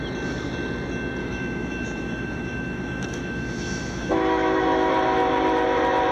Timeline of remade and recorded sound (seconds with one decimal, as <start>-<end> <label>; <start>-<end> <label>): 0.0-1.2 recorded; 1.2-4.9 remade; 4.9-6.1 recorded